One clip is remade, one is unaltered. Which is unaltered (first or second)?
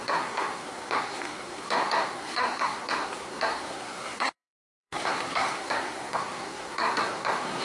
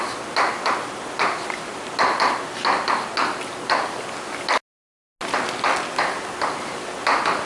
second